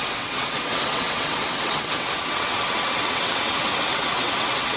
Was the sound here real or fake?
fake